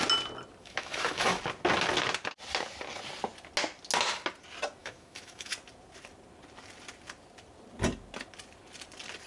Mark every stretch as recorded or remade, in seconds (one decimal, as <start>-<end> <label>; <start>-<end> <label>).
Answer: 0.0-0.6 recorded; 0.6-1.4 remade; 1.4-4.8 recorded; 4.8-5.5 remade; 5.5-9.3 recorded

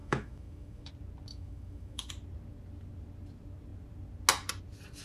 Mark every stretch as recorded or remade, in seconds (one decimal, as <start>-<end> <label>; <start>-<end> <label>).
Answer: 0.0-0.9 remade; 0.9-1.3 recorded; 1.3-2.1 remade; 2.1-5.0 recorded

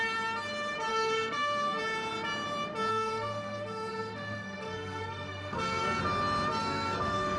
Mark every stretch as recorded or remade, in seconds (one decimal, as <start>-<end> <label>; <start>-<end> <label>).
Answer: 0.0-0.9 recorded; 0.9-1.8 remade; 1.8-2.9 recorded; 2.9-6.0 remade; 6.0-6.5 recorded; 6.5-7.4 remade